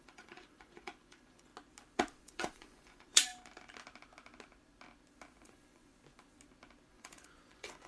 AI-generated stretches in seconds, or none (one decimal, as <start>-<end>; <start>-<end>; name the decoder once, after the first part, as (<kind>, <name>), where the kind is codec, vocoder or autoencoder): 0.0-1.5 (vocoder, Vocos); 2.2-3.3; 5.4-5.9; 6.9-7.9